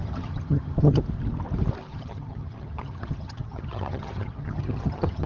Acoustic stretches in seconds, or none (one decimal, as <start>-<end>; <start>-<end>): 1.0-1.9